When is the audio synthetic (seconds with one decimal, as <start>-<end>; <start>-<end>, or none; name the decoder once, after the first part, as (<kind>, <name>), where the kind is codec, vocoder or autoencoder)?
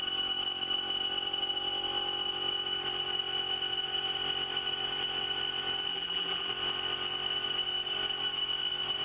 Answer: 5.9-6.5 (vocoder, BigVGAN v2)